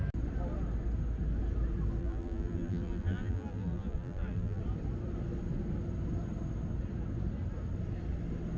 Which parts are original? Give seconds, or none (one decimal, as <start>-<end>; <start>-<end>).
0.0-2.0; 4.6-8.6